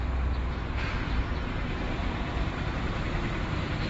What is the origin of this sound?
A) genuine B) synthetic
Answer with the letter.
A